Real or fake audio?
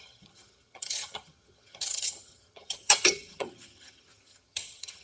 fake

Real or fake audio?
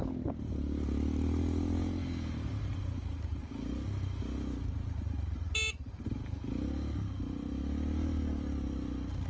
real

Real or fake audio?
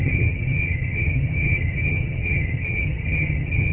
fake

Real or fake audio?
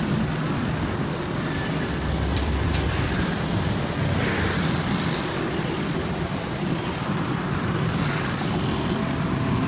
real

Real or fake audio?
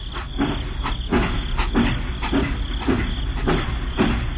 real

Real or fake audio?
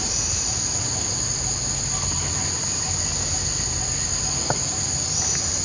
real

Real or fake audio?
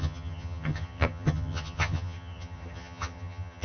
fake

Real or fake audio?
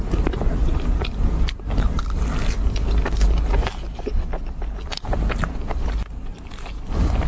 real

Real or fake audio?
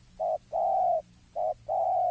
real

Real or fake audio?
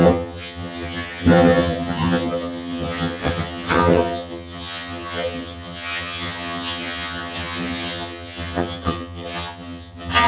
fake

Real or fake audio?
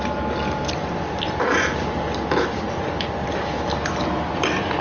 real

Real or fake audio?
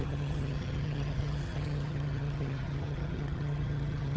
fake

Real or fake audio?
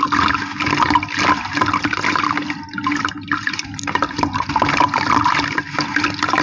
real